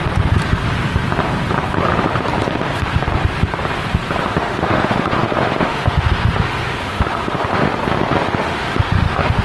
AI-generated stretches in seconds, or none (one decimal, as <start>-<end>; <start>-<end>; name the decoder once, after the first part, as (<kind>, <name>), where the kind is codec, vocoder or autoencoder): 4.2-7.8 (autoencoder, DAC-VAE); 8.4-9.4